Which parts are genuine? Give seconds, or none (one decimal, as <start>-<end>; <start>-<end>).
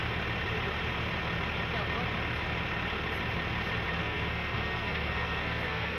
0.0-4.0